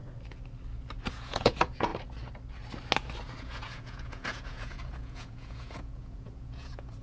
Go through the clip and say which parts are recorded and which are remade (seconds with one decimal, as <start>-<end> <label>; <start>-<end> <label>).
0.0-1.1 recorded; 1.1-1.9 remade; 1.9-3.4 recorded; 3.4-7.0 remade

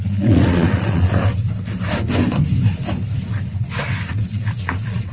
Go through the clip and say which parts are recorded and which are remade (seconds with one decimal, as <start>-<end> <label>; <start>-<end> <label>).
0.0-1.3 remade; 1.3-4.1 recorded; 4.1-5.1 remade

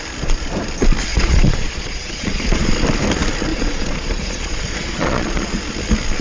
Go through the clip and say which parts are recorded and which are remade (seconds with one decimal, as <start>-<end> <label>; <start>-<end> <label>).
0.0-1.1 recorded; 1.1-2.7 remade; 2.7-3.5 recorded; 3.5-5.7 remade; 5.7-6.2 recorded

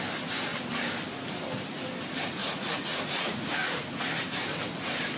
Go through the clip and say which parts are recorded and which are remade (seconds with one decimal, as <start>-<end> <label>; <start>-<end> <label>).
0.0-2.4 recorded; 2.4-4.0 remade; 4.0-5.2 recorded